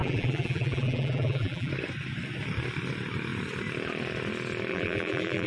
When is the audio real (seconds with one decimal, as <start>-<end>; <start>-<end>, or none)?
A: 1.7-4.7